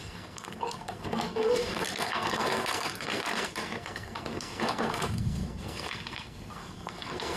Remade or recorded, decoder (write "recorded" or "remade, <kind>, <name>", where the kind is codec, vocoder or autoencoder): remade, codec, SNAC